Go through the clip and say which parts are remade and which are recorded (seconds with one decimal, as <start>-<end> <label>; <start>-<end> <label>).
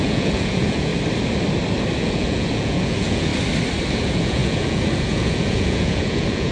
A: 0.0-0.9 remade; 0.9-2.0 recorded; 2.0-3.3 remade; 3.3-3.9 recorded; 3.9-6.5 remade